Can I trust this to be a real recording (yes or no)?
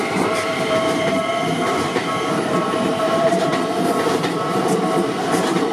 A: no